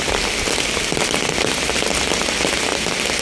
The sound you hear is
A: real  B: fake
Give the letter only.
A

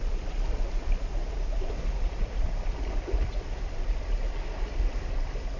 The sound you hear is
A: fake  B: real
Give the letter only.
A